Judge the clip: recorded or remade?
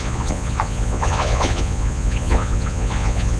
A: remade